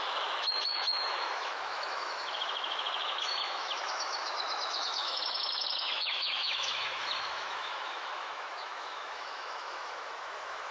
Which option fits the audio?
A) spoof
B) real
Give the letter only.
A